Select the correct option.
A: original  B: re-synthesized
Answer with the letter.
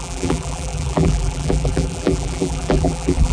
B